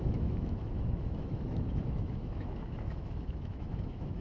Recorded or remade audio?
remade